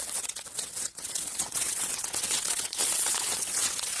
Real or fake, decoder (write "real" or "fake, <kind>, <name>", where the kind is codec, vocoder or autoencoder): fake, vocoder, WaveNeXt